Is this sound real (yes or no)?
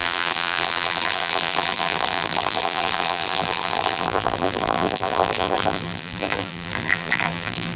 no